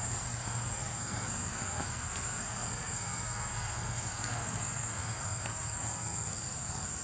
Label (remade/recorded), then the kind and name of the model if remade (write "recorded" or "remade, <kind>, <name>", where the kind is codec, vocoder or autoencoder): remade, codec, SNAC